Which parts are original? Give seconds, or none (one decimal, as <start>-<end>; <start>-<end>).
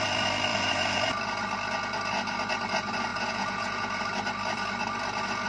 0.0-0.5; 1.1-3.1; 4.0-5.5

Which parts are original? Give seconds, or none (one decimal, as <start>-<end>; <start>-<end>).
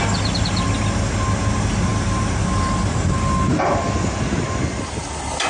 0.0-5.5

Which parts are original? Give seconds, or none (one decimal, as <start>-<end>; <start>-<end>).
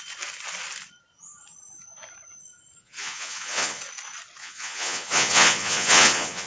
0.0-2.8; 3.8-4.4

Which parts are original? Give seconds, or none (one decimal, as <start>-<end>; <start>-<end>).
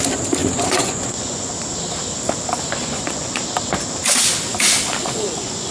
0.0-0.4; 1.5-2.8; 3.4-5.0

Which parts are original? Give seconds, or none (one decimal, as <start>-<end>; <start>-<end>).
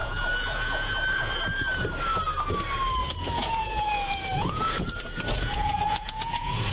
1.3-3.0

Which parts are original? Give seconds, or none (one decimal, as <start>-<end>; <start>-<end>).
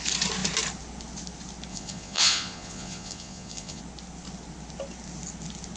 0.0-1.7; 3.8-5.8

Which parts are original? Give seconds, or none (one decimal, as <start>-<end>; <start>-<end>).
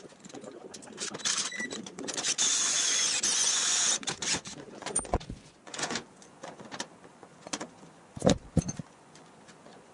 0.7-1.4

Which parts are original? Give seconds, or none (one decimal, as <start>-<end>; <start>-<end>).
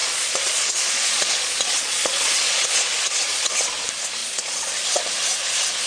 3.5-4.2; 4.7-5.9